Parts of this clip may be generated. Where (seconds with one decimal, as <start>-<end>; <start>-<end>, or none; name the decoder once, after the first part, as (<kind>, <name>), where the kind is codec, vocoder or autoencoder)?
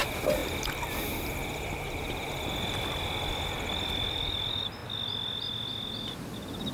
none